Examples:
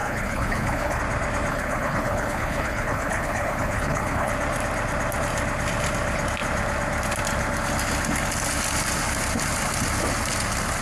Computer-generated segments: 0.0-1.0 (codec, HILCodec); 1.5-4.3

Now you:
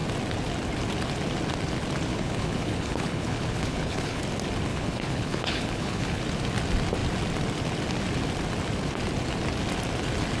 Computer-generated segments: 2.1-4.2 (codec, HILCodec); 4.7-6.2

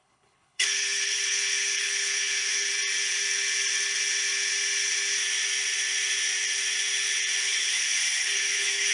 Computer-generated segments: 0.0-2.7 (codec, HILCodec); 7.4-8.9